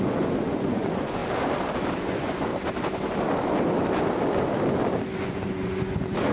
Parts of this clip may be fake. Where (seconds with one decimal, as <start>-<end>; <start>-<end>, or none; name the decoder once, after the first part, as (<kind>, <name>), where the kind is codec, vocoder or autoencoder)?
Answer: 0.0-1.2 (vocoder, Vocos); 2.0-2.5; 5.2-6.3